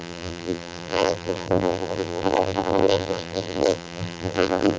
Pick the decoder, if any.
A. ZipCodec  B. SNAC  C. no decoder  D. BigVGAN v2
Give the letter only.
D